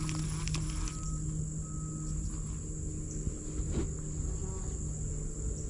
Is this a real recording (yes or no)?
yes